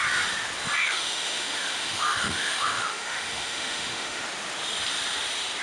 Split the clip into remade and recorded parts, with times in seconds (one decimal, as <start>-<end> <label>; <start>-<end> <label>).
0.0-0.8 recorded; 0.8-4.2 remade; 4.2-5.6 recorded